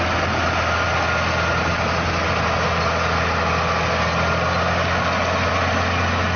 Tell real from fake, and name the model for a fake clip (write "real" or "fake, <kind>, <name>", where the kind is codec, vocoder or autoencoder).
real